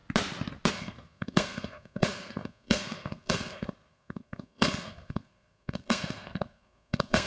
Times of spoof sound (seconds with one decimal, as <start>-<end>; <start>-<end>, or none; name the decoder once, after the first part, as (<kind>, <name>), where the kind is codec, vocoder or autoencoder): 0.7-7.3 (codec, SNAC)